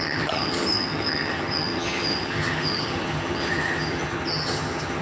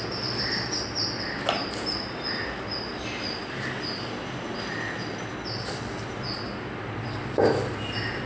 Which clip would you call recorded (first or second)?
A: second